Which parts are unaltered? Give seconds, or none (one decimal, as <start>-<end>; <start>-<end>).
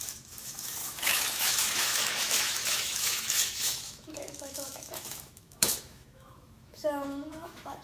none